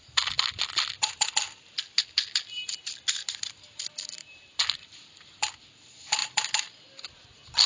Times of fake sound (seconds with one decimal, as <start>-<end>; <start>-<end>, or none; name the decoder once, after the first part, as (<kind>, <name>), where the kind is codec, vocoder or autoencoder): 4.2-5.7 (vocoder, BigVGAN v2)